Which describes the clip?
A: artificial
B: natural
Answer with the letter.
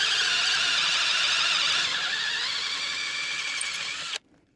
B